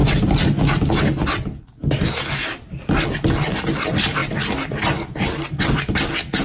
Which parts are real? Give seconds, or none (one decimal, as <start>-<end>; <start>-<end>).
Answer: 0.0-6.4